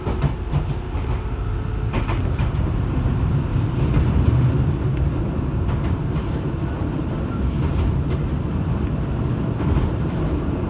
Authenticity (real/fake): real